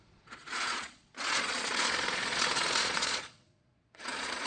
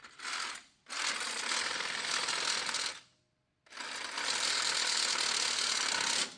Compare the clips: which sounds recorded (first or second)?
second